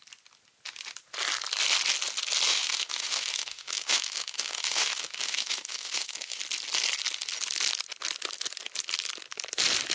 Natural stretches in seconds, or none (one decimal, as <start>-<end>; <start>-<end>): 0.0-2.5; 6.4-9.9